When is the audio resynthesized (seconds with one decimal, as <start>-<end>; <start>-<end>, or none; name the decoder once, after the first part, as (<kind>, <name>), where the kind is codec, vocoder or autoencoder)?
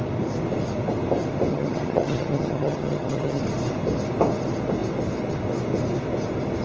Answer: 1.5-3.4 (vocoder, HiFi-GAN)